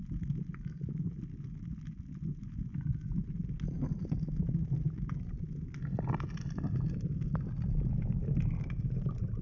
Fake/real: real